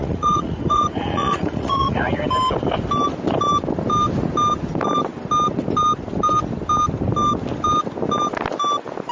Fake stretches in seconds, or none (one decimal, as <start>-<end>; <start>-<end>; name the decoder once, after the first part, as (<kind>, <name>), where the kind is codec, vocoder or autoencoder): 0.0-2.2 (vocoder, Vocos)